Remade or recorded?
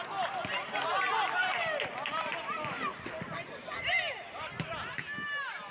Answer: recorded